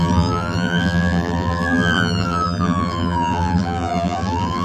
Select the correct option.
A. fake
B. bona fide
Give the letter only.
A